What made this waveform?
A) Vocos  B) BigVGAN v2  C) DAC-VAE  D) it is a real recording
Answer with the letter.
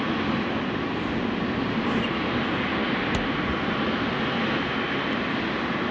D